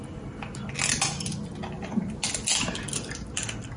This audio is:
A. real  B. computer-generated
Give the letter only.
A